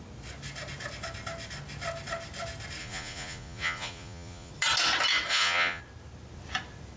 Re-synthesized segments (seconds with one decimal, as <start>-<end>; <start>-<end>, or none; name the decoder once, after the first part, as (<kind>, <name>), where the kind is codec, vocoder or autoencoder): 2.8-4.5 (vocoder, Vocos); 5.3-5.8